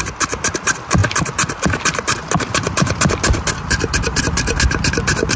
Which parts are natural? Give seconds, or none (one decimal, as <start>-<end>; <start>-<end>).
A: 0.0-5.4